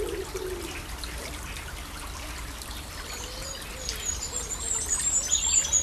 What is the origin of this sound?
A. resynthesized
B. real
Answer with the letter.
B